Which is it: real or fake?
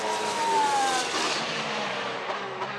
fake